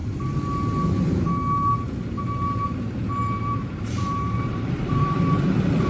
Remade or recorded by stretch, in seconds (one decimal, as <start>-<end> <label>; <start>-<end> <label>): 0.0-3.4 recorded; 3.4-5.9 remade